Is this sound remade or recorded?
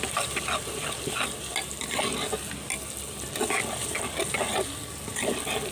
recorded